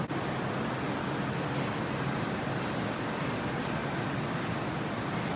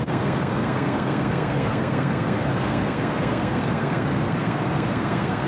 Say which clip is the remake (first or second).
second